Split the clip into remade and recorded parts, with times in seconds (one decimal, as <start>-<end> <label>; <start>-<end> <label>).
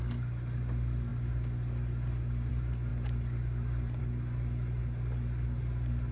0.0-6.1 recorded